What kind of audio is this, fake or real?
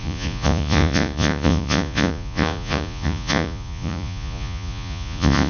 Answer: fake